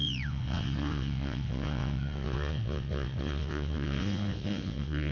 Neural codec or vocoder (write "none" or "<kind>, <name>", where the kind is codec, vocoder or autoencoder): vocoder, WaveNeXt